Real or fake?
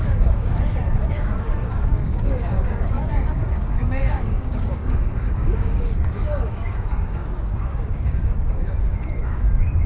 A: fake